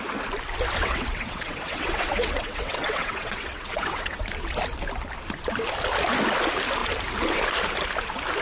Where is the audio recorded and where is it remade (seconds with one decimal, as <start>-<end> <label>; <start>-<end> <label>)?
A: 0.0-0.8 recorded; 0.8-4.2 remade; 4.2-8.4 recorded